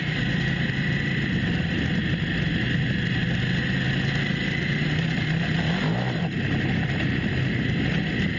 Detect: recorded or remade recorded